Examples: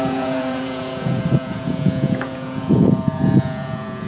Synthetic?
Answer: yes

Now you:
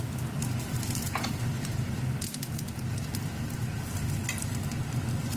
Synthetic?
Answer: no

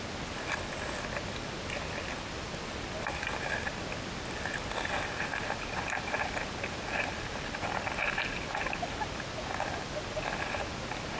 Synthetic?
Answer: no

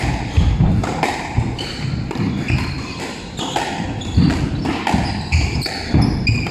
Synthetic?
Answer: no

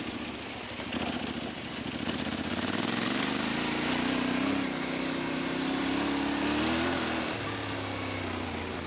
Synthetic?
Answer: no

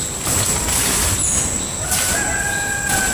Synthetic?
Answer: no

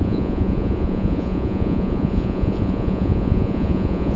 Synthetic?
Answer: yes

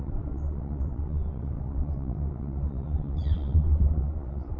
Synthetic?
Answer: yes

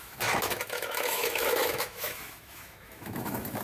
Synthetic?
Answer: yes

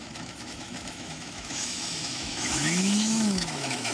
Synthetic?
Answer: yes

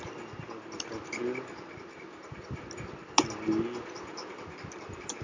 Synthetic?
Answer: no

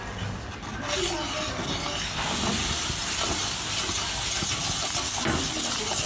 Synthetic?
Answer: no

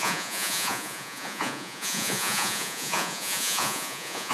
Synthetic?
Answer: yes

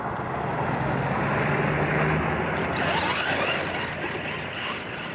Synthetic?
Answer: no